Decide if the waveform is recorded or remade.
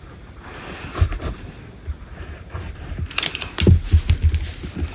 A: recorded